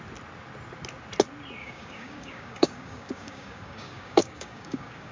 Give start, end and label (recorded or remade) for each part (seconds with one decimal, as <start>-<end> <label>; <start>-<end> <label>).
0.0-1.6 recorded; 1.6-5.1 remade